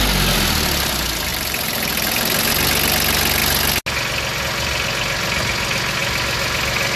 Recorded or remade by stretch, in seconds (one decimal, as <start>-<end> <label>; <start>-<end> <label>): 0.0-1.3 recorded; 1.3-2.5 remade; 2.5-7.0 recorded